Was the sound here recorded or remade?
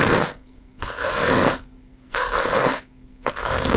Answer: remade